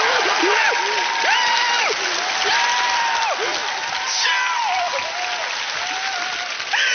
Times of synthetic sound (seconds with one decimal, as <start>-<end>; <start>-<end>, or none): none